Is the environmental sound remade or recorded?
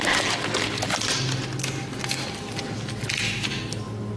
recorded